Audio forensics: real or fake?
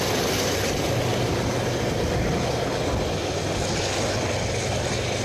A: real